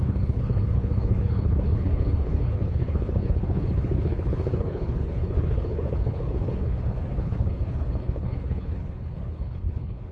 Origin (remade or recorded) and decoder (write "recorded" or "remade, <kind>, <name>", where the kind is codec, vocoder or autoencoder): remade, codec, HILCodec